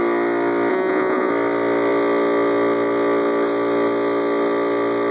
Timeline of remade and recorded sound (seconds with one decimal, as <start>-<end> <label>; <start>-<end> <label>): 0.0-0.7 recorded; 0.7-1.3 remade; 1.3-5.1 recorded